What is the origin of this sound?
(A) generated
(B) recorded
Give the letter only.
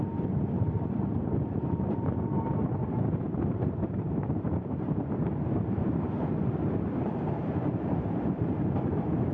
A